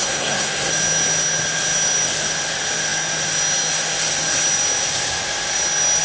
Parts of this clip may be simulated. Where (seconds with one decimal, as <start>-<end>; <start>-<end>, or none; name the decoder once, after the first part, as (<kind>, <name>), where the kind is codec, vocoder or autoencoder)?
0.0-0.7 (codec, SNAC)